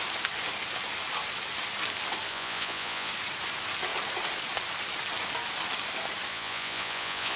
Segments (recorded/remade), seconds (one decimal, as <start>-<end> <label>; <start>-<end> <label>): 0.0-2.3 recorded; 2.3-3.1 remade; 3.1-6.3 recorded; 6.3-7.4 remade